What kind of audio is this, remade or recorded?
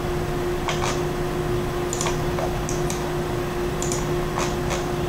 recorded